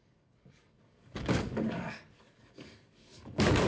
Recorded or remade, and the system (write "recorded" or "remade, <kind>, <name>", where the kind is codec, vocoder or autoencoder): remade, codec, DAC